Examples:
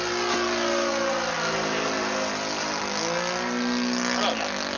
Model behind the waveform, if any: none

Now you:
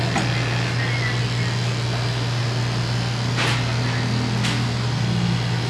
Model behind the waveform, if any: none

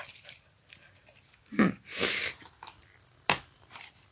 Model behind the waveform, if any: none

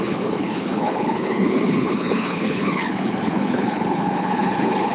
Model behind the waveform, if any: codec, HILCodec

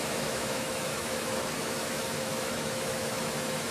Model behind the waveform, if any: autoencoder, DAC-VAE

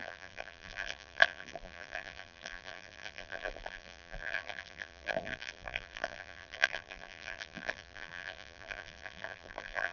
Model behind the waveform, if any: vocoder, BigVGAN v2